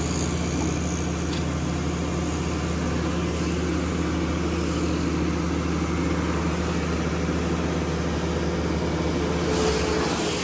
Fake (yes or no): no